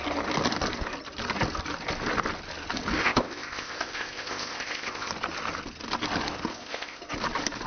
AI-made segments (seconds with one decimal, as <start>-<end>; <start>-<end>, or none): 3.0-5.1; 6.5-7.0